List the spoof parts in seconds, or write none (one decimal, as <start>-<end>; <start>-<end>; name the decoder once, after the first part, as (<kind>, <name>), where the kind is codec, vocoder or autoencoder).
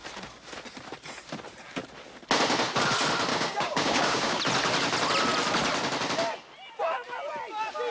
3.3-4.4 (codec, DAC)